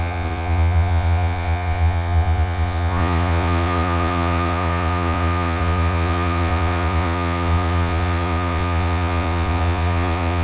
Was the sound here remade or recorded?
remade